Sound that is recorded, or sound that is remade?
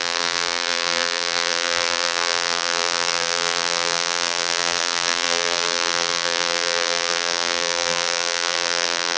remade